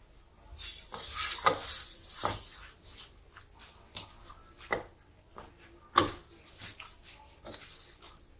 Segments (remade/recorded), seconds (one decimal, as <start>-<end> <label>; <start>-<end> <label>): 0.0-1.9 recorded; 1.9-2.8 remade; 2.8-8.4 recorded